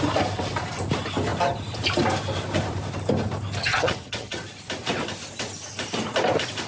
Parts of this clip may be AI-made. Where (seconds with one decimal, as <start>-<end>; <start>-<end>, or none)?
3.6-4.4